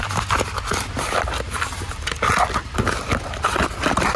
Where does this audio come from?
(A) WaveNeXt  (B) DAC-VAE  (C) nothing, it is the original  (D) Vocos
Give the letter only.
C